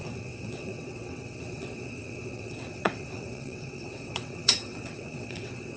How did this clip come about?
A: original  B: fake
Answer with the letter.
B